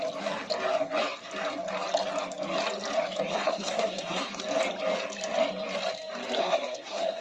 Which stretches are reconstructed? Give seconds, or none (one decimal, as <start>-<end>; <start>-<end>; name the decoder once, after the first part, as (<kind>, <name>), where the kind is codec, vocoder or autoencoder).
3.3-4.4 (codec, SNAC); 6.4-7.2

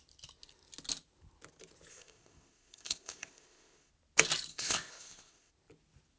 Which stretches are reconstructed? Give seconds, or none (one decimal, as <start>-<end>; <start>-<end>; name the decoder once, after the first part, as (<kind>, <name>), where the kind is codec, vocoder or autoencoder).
1.9-3.9 (codec, ZipCodec); 4.5-5.5